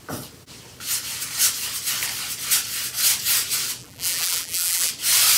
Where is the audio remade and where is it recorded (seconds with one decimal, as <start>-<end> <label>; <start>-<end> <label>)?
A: 0.0-3.8 recorded; 3.8-4.9 remade; 4.9-5.4 recorded